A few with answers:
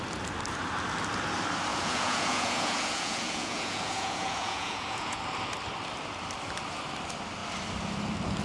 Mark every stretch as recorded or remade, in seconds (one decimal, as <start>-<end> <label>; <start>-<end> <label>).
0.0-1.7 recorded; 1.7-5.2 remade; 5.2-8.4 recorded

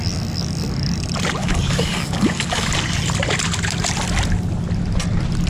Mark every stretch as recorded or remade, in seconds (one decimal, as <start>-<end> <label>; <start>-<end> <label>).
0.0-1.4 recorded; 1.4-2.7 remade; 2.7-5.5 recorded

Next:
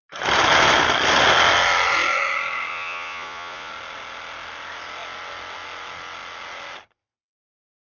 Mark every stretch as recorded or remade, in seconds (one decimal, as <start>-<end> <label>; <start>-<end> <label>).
0.0-2.7 recorded; 2.7-3.7 remade; 3.7-7.9 recorded

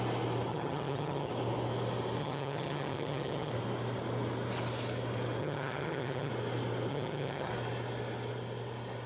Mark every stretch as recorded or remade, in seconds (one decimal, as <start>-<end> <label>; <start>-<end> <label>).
0.0-0.5 recorded; 0.5-1.3 remade; 1.3-2.2 recorded; 2.2-3.5 remade; 3.5-5.4 recorded; 5.4-6.3 remade; 6.3-6.9 recorded; 6.9-7.5 remade; 7.5-9.1 recorded

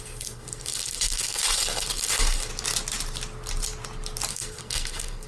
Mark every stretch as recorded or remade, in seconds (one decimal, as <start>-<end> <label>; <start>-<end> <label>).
0.0-2.5 remade; 2.5-4.3 recorded; 4.3-5.3 remade